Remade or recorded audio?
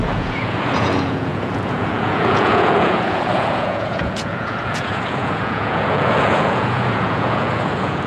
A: remade